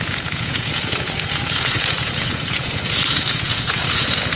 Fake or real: fake